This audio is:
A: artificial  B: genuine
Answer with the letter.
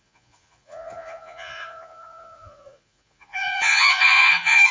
A